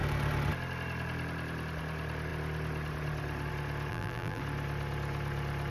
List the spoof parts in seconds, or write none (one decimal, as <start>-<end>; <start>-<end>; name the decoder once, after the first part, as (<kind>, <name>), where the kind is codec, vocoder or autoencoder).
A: 3.9-4.4 (vocoder, BigVGAN v2)

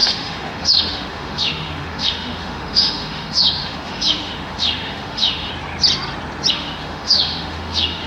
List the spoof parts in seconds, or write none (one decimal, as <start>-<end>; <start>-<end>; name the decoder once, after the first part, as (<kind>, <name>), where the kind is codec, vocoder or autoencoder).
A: 0.0-5.5 (autoencoder, DAC-VAE); 6.5-8.1

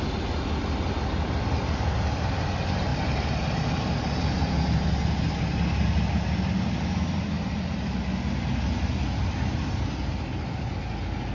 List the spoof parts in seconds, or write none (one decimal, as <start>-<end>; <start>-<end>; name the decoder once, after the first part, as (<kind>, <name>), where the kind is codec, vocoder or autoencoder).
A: none